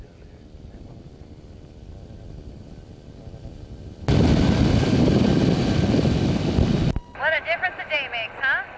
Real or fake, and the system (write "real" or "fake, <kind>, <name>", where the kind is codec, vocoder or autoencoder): real